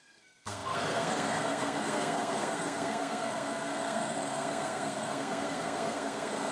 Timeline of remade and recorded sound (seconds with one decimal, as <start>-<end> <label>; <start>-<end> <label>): 0.0-6.5 remade